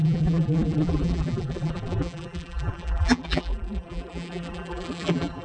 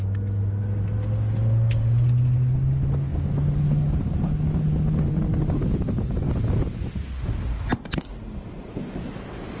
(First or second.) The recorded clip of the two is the second